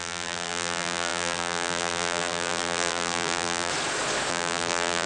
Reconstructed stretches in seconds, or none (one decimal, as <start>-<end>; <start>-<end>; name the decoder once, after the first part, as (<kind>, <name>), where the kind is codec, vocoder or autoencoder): 0.0-3.7 (vocoder, BigVGAN v2); 4.3-5.1